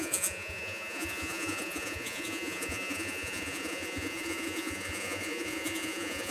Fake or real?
fake